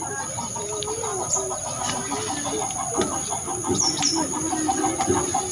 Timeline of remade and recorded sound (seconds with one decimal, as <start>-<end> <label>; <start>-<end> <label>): 0.0-5.5 recorded